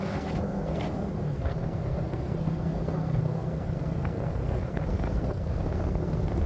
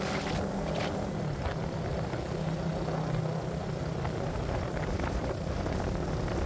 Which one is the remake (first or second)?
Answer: first